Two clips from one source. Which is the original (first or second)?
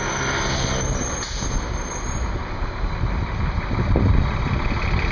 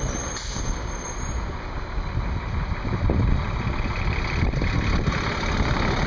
first